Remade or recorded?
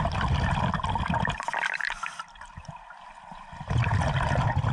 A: recorded